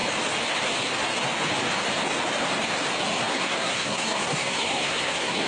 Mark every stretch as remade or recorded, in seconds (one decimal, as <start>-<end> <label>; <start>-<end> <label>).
0.0-3.3 recorded; 3.3-5.5 remade

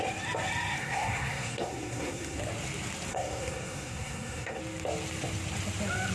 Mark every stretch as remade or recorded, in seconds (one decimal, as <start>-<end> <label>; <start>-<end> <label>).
0.0-0.8 recorded; 0.8-2.4 remade; 2.4-3.1 recorded; 3.1-4.6 remade; 4.6-6.1 recorded

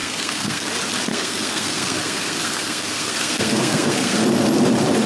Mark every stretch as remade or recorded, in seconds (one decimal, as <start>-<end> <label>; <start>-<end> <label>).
0.0-0.7 remade; 0.7-1.1 recorded; 1.1-4.2 remade; 4.2-5.1 recorded

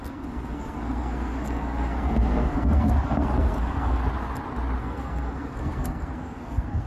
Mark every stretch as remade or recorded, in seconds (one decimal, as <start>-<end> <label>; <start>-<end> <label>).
0.0-4.0 remade; 4.0-4.8 recorded; 4.8-6.9 remade

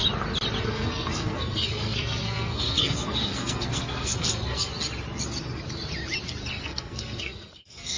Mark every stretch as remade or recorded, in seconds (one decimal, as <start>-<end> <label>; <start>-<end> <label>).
0.0-0.6 recorded; 0.6-4.7 remade; 4.7-6.5 recorded; 6.5-8.0 remade

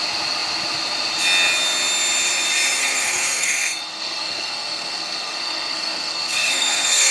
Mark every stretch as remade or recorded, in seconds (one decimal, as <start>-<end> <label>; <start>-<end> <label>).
0.0-2.8 recorded; 2.8-7.1 remade

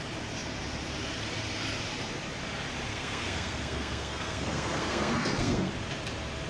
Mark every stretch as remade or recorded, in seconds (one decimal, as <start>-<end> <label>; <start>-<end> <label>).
0.0-2.9 recorded; 2.9-5.7 remade; 5.7-6.5 recorded